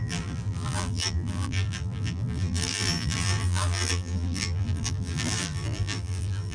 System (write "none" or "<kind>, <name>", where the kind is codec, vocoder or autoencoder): vocoder, BigVGAN v2